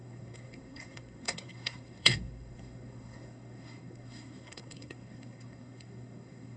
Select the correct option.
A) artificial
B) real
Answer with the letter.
A